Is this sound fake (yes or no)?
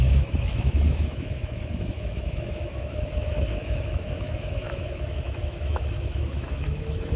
yes